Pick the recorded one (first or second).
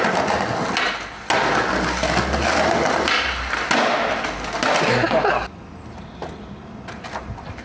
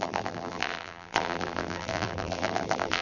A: first